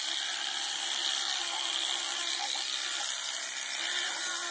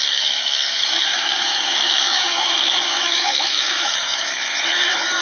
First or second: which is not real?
second